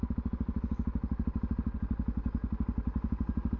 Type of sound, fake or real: real